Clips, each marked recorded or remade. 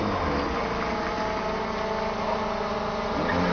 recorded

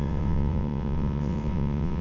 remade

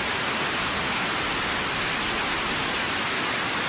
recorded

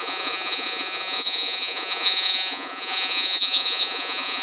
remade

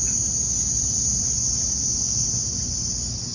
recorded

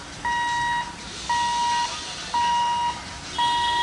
recorded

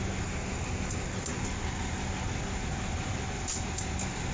recorded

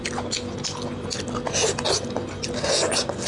recorded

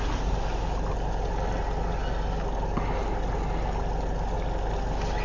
recorded